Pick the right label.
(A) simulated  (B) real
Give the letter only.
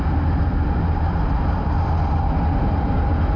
B